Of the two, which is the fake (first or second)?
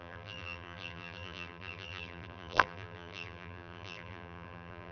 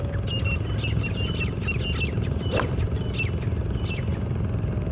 first